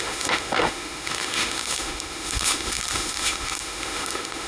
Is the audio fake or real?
fake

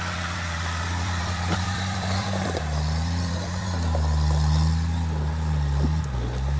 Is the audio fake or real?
fake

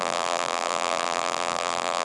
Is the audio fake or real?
fake